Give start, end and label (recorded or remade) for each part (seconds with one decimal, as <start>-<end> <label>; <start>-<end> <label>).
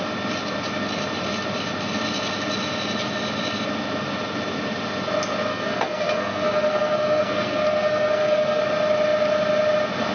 0.0-5.5 recorded; 5.5-8.6 remade; 8.6-10.1 recorded